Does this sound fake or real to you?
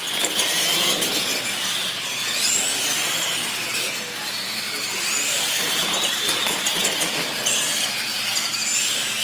real